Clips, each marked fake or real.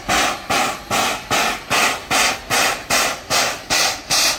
real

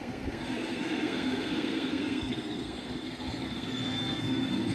fake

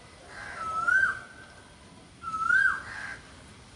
real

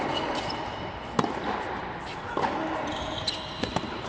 real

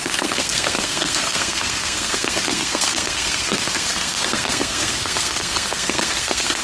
fake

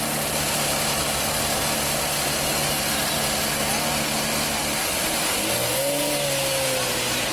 real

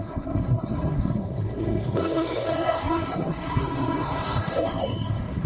fake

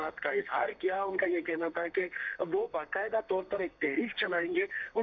fake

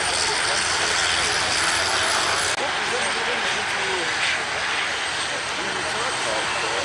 real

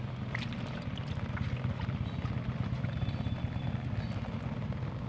real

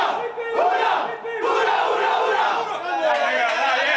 real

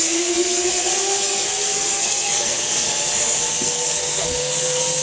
fake